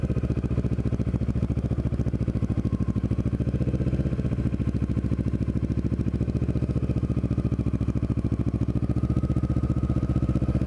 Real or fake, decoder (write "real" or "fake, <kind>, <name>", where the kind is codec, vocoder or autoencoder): real